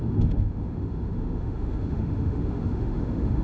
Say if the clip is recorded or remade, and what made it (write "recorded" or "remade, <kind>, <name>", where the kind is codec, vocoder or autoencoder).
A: remade, autoencoder, DAC-VAE